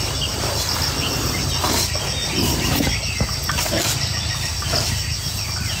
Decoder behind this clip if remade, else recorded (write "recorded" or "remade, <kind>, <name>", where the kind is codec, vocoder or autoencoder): recorded